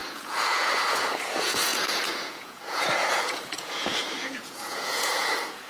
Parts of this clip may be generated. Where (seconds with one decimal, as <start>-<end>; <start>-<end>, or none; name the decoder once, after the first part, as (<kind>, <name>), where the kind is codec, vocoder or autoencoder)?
0.0-5.7 (vocoder, Vocos)